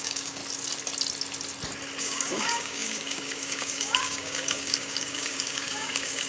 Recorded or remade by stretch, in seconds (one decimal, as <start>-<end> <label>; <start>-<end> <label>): 0.0-0.4 remade; 0.4-2.0 recorded; 2.0-6.3 remade